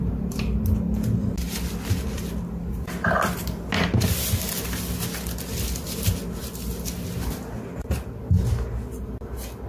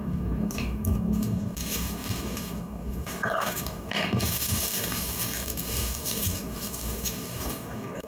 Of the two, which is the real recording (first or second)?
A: first